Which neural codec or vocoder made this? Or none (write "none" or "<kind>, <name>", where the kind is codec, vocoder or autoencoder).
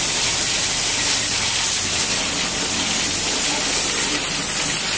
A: none